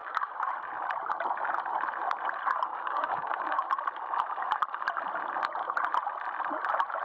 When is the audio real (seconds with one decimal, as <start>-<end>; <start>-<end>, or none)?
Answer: 0.5-2.7; 3.7-7.0

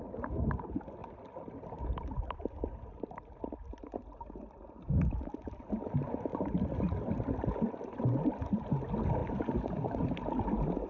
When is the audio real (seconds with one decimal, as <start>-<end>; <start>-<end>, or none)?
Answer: 0.0-10.9

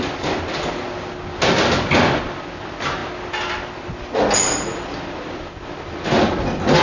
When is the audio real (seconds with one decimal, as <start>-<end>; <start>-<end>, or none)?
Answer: 0.0-6.8

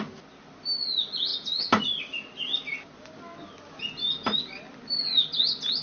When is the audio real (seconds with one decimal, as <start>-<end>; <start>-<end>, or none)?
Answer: 0.0-5.8

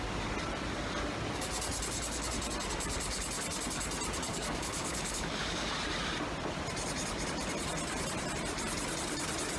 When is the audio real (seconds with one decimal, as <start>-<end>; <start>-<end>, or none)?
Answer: 0.0-4.3; 5.7-9.6

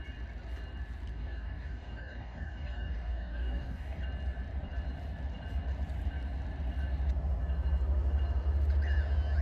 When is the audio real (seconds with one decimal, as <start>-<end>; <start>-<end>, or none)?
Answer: 0.0-1.1; 4.0-9.4

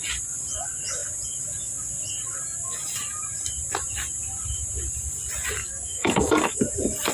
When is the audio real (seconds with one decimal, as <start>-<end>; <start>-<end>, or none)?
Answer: 0.0-5.6; 6.6-7.1